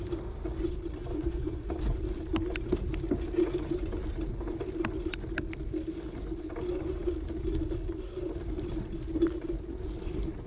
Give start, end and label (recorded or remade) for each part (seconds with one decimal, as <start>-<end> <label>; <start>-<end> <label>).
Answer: 0.0-1.0 recorded; 1.0-1.7 remade; 1.7-10.5 recorded